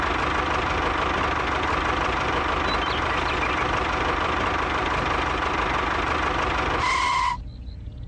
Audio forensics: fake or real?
real